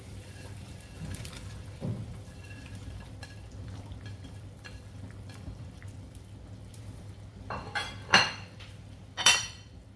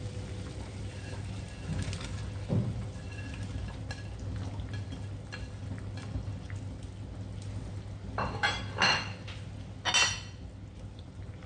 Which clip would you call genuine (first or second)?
second